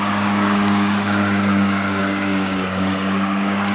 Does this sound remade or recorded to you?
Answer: remade